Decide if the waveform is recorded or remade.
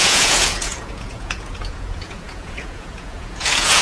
remade